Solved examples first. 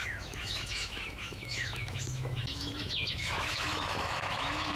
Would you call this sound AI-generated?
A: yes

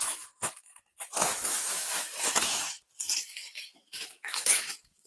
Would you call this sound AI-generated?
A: yes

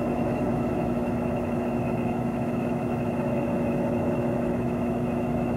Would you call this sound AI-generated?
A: yes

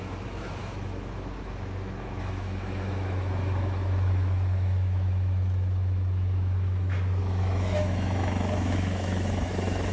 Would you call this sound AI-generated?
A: yes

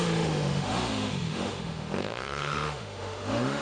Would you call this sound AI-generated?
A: yes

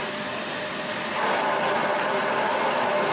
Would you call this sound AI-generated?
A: no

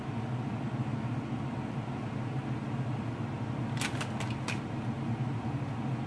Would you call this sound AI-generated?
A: no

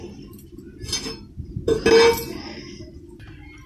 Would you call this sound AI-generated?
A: no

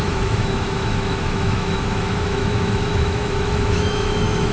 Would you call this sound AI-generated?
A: yes